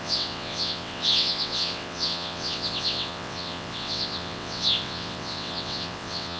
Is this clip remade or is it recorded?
remade